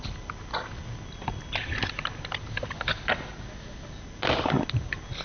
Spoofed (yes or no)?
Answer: no